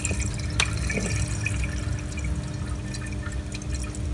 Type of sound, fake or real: real